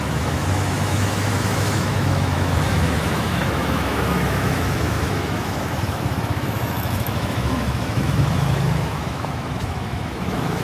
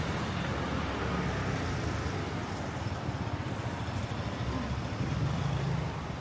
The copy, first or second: first